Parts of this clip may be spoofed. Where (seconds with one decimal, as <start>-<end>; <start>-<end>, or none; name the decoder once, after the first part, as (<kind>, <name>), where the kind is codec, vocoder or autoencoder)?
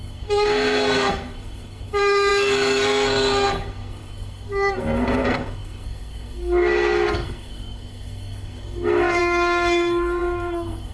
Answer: 0.0-10.9 (codec, SNAC)